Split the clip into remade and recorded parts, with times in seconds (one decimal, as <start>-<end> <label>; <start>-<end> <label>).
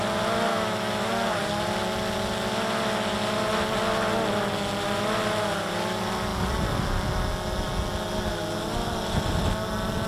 0.0-0.5 recorded; 0.5-1.1 remade; 1.1-10.1 recorded